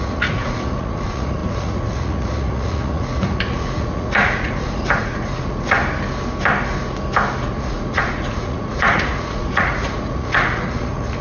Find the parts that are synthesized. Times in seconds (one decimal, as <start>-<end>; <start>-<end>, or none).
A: 0.0-5.8; 7.4-11.2